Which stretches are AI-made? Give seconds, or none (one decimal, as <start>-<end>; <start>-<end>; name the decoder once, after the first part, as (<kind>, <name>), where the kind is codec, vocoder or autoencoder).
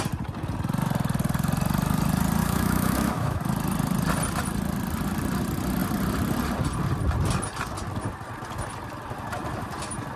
2.4-3.4 (autoencoder, DAC-VAE)